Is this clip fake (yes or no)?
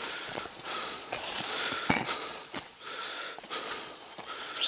yes